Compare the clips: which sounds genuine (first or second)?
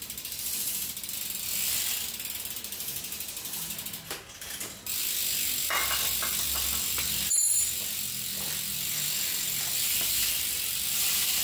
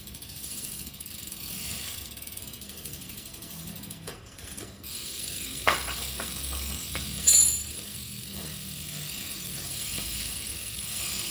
first